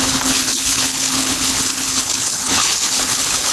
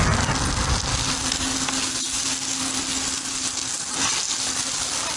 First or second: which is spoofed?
first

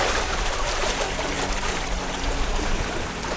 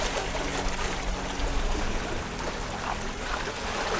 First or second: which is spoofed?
first